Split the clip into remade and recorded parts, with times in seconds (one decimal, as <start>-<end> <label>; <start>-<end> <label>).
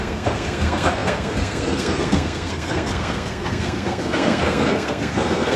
0.0-5.6 remade